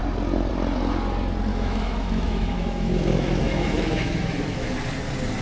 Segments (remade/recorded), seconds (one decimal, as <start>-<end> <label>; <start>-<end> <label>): 0.0-1.5 recorded; 1.5-4.7 remade; 4.7-5.4 recorded